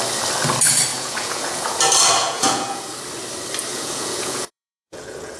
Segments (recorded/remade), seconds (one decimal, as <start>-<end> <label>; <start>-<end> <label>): 0.0-0.9 recorded; 0.9-1.8 remade; 1.8-2.2 recorded; 2.2-3.0 remade; 3.0-3.7 recorded; 3.7-5.4 remade